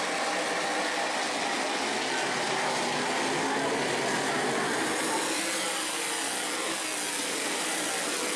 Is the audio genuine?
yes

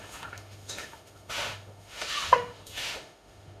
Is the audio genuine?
no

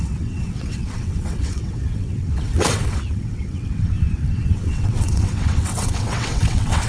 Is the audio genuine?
no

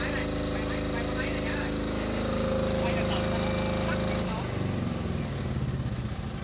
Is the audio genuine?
yes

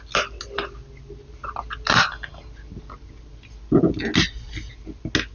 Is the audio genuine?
yes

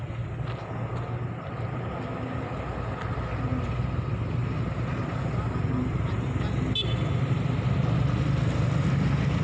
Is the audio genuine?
yes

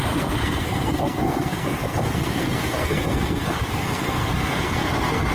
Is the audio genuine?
no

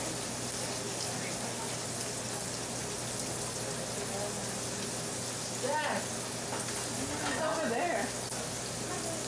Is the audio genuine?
yes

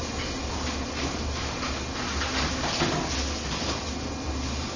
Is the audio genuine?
yes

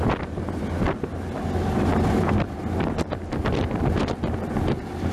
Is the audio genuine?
yes